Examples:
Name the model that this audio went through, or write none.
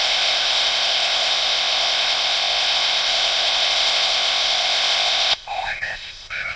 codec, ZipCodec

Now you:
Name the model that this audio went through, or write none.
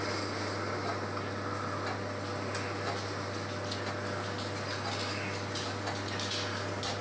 none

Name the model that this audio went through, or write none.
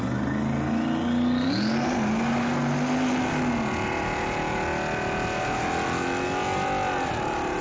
none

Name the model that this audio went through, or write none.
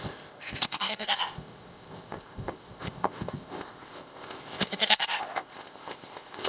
codec, ZipCodec